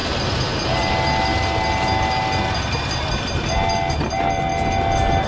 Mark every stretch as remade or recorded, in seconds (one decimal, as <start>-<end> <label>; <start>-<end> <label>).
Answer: 0.0-5.3 recorded